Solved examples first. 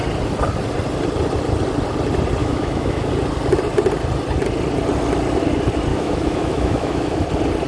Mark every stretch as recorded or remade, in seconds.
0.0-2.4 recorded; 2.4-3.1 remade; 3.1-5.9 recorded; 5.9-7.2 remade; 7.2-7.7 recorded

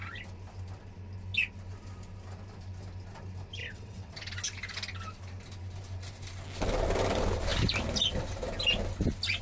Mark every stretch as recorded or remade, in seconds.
0.0-3.6 recorded; 3.6-4.1 remade; 4.1-9.4 recorded